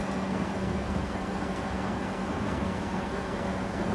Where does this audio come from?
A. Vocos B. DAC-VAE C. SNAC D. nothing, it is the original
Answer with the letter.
C